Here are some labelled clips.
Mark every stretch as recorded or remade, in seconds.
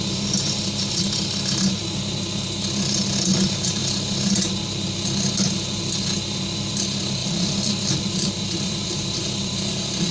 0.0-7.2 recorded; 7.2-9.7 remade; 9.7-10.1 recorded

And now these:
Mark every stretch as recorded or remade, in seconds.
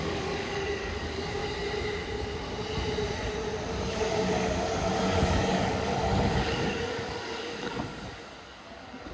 0.0-1.4 remade; 1.4-3.9 recorded; 3.9-9.1 remade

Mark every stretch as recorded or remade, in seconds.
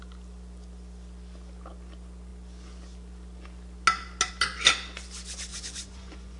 0.0-5.5 recorded; 5.5-6.4 remade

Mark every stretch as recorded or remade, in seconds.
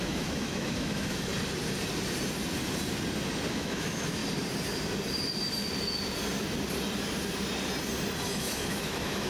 0.0-1.3 remade; 1.3-3.5 recorded; 3.5-4.2 remade; 4.2-8.2 recorded; 8.2-9.3 remade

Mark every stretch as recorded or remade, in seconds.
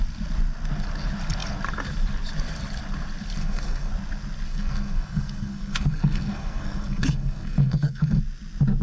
0.0-3.4 recorded; 3.4-3.9 remade; 3.9-4.5 recorded; 4.5-8.2 remade; 8.2-8.8 recorded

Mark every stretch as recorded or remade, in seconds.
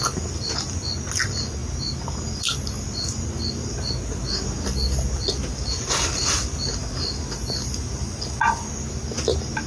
0.0-9.7 recorded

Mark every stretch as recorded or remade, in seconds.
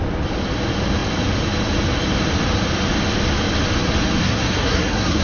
0.0-4.2 recorded; 4.2-5.2 remade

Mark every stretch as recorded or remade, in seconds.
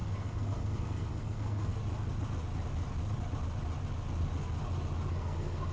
0.0-1.7 remade; 1.7-5.1 recorded; 5.1-5.7 remade